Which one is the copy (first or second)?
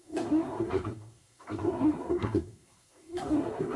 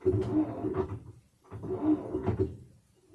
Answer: first